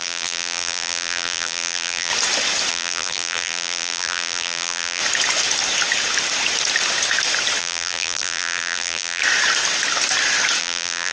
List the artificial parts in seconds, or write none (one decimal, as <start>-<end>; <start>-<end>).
0.0-2.1; 2.7-5.0; 7.6-9.2; 10.6-11.1